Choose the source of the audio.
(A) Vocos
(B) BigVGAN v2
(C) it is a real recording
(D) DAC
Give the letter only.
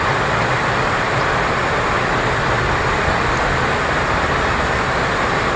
C